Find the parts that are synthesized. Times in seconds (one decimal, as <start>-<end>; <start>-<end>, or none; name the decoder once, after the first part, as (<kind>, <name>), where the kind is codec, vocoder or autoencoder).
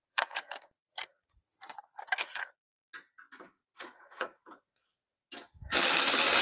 0.0-2.0 (vocoder, Vocos); 3.6-4.6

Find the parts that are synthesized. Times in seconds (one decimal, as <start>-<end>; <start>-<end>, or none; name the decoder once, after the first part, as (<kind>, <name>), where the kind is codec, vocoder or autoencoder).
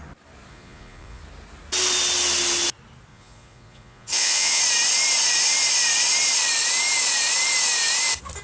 0.5-1.2 (vocoder, Vocos); 3.1-4.6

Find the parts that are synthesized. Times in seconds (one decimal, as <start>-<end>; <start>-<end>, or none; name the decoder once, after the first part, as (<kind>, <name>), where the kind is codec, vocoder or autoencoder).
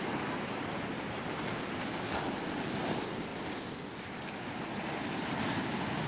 none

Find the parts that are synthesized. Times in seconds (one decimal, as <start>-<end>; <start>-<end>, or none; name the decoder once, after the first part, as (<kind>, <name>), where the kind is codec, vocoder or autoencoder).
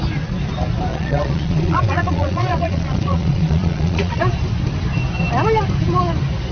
0.9-4.2 (vocoder, Vocos)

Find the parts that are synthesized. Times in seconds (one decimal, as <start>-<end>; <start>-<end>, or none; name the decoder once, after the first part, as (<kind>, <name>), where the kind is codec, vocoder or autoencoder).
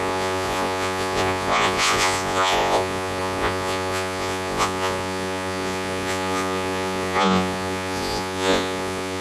0.0-9.2 (vocoder, Vocos)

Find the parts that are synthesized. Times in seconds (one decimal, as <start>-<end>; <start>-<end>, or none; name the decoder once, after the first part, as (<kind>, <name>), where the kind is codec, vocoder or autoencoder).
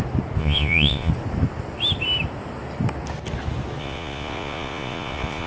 0.4-1.1 (vocoder, Vocos); 3.8-5.5